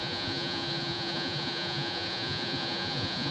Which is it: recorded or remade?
remade